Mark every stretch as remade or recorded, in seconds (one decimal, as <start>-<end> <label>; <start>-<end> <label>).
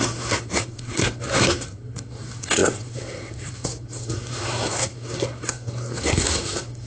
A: 0.0-6.9 remade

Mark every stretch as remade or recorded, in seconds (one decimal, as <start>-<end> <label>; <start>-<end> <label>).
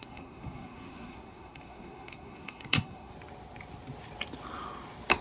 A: 0.0-3.1 remade; 3.1-5.2 recorded